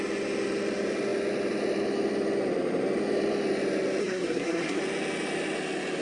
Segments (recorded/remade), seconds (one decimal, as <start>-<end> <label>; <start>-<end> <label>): 0.0-4.0 recorded; 4.0-4.8 remade; 4.8-6.0 recorded